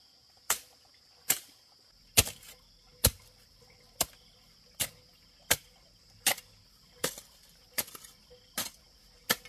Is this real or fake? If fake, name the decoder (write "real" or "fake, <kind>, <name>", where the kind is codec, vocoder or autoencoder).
real